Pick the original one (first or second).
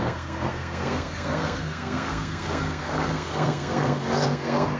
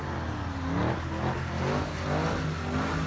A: second